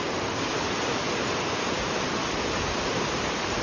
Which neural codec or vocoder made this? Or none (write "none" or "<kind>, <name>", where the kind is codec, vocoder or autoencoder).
none